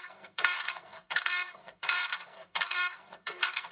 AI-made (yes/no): yes